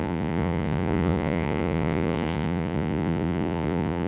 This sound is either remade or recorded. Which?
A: remade